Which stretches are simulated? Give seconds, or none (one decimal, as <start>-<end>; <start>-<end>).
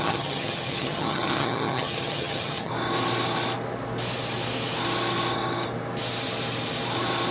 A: 0.0-2.7